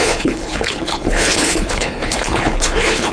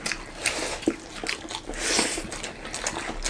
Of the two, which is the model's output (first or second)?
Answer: first